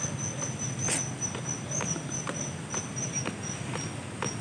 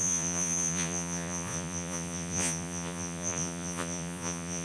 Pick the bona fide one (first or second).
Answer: first